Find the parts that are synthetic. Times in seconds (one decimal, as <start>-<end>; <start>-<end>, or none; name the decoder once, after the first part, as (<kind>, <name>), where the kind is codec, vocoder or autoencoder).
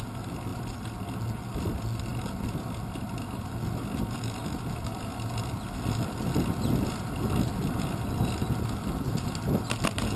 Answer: none